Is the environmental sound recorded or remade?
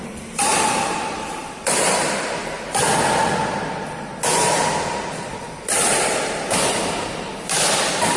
recorded